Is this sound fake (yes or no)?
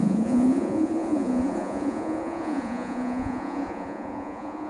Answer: yes